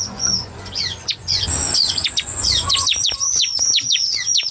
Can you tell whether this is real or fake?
fake